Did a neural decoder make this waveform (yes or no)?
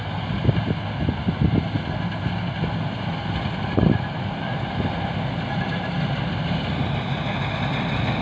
no